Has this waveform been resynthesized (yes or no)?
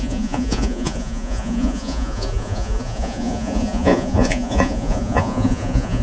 yes